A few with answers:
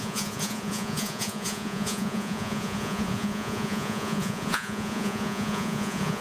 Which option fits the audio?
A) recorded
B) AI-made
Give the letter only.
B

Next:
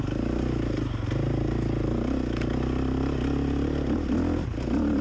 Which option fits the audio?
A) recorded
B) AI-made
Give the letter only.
A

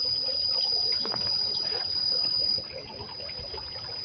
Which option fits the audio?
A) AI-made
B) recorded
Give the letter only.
B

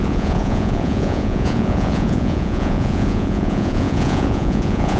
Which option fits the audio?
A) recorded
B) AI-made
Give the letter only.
B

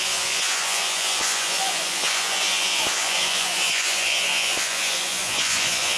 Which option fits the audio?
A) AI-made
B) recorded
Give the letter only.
A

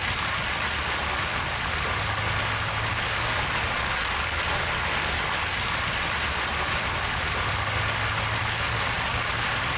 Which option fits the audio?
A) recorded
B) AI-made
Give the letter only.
A